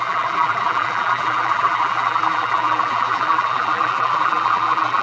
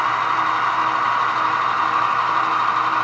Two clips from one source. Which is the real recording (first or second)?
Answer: second